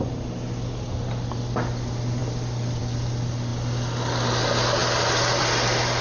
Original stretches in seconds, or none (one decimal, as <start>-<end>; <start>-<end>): 0.0-2.2; 2.8-3.5; 4.0-4.8; 5.4-6.0